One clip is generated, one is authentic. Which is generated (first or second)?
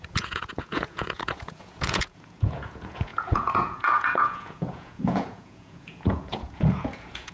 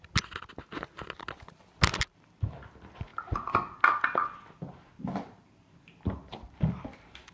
first